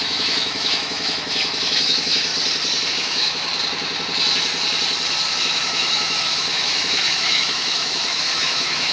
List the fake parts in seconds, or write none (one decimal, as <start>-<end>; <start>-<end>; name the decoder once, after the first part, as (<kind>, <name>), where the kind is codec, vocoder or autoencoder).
0.0-2.3 (autoencoder, DAC-VAE); 2.9-3.5; 5.4-8.9